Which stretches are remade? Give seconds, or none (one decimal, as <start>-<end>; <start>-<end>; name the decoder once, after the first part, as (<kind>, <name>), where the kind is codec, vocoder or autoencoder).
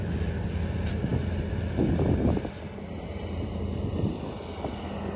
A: none